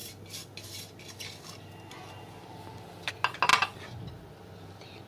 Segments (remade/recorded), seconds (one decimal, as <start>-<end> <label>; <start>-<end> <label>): 0.0-5.1 recorded

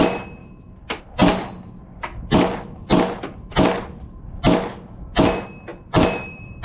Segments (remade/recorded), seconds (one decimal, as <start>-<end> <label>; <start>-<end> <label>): 0.0-0.4 recorded; 0.4-1.0 remade; 1.0-5.7 recorded; 5.7-6.6 remade

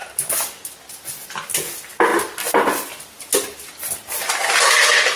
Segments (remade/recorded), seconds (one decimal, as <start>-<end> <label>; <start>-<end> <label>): 0.0-0.7 remade; 0.7-5.2 recorded

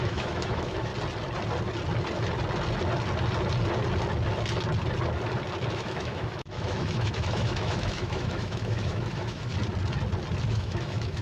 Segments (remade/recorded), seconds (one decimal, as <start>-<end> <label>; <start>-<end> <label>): 0.0-0.9 remade; 0.9-5.7 recorded; 5.7-9.5 remade; 9.5-10.5 recorded; 10.5-11.2 remade